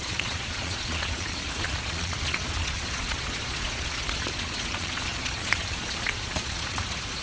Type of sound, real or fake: fake